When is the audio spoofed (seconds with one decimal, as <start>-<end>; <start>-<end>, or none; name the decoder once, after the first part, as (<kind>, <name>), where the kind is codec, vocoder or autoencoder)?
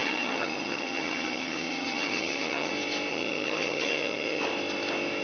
0.0-2.7 (vocoder, HiFi-GAN); 3.1-4.4